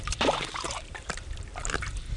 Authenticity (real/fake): fake